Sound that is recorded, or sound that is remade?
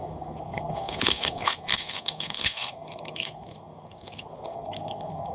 remade